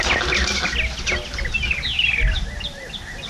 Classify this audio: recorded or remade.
recorded